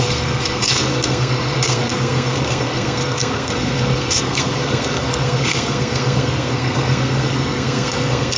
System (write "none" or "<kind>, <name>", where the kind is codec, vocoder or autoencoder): codec, SNAC